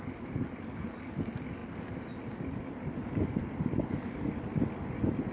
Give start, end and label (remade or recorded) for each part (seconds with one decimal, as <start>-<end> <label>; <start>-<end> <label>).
0.0-5.3 recorded